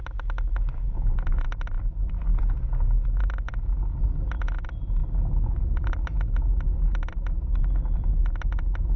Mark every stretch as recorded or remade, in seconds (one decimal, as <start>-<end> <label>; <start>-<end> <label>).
0.0-9.0 recorded